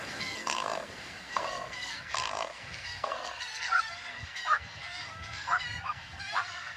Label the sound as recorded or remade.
remade